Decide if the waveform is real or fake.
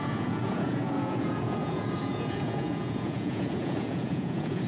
fake